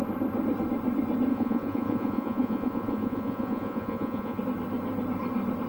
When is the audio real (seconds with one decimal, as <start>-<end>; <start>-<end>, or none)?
0.0-1.3; 4.4-5.7